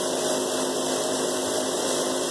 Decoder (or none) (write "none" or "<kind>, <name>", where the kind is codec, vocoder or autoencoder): none